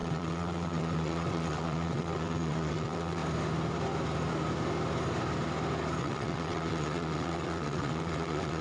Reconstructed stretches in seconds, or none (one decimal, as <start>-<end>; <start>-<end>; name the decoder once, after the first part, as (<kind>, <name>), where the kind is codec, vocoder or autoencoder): 0.0-3.2 (vocoder, WaveNeXt); 6.0-8.6